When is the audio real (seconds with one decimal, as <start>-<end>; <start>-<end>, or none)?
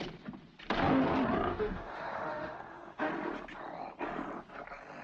0.0-1.5; 3.1-5.0